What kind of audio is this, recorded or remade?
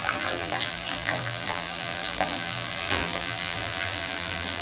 remade